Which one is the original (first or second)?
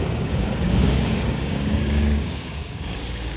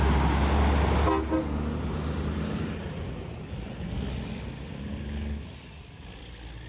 second